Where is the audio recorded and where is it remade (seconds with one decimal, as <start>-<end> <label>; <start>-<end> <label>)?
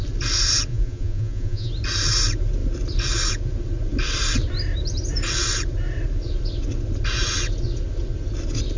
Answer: 0.0-0.7 recorded; 0.7-1.7 remade; 1.7-8.8 recorded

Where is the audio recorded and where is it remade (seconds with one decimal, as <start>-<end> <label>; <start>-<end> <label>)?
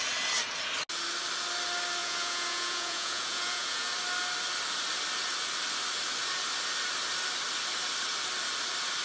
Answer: 0.0-2.0 recorded; 2.0-3.9 remade; 3.9-9.0 recorded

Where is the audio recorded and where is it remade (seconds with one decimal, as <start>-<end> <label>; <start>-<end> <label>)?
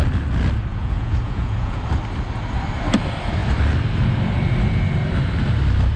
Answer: 0.0-0.7 recorded; 0.7-1.8 remade; 1.8-6.0 recorded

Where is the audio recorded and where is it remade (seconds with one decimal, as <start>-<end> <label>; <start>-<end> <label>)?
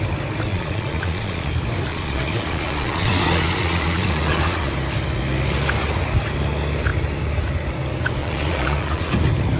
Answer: 0.0-0.5 recorded; 0.5-1.5 remade; 1.5-1.9 recorded; 1.9-4.7 remade; 4.7-8.2 recorded; 8.2-9.1 remade; 9.1-9.6 recorded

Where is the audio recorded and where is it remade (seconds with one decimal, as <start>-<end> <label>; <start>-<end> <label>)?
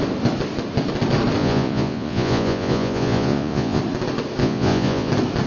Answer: 0.0-1.4 recorded; 1.4-3.8 remade; 3.8-4.4 recorded; 4.4-5.1 remade; 5.1-5.5 recorded